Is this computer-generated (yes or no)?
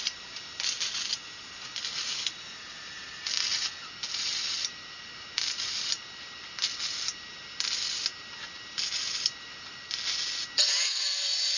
no